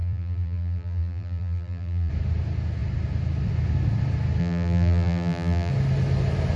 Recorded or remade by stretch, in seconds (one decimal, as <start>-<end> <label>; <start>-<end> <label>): 0.0-2.1 remade; 2.1-4.4 recorded; 4.4-5.7 remade; 5.7-6.6 recorded